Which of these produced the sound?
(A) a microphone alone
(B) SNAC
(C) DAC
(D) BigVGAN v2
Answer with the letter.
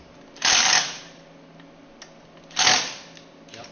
A